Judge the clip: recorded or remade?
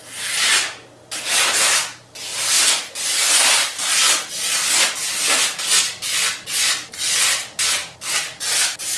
recorded